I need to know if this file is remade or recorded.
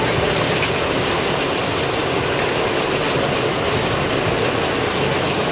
recorded